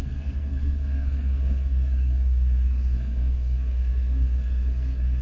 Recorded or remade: remade